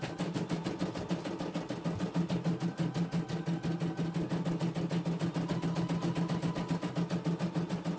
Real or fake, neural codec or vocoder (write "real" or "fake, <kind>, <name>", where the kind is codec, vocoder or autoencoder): real